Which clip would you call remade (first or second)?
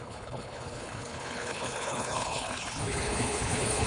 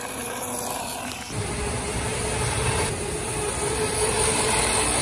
first